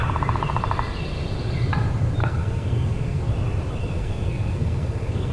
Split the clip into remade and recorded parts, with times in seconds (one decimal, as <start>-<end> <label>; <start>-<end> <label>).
0.0-2.2 recorded; 2.2-3.3 remade; 3.3-3.8 recorded; 3.8-5.3 remade